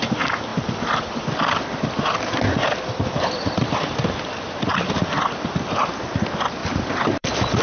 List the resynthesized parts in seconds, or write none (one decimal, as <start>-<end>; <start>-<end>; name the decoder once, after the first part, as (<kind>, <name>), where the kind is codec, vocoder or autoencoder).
6.6-7.6 (vocoder, BigVGAN v2)